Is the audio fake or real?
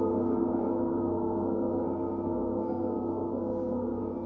fake